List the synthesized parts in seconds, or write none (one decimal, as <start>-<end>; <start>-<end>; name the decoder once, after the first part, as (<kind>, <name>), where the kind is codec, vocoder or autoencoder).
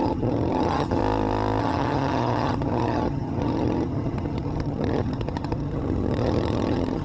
0.0-1.0 (vocoder, HiFi-GAN); 1.6-7.0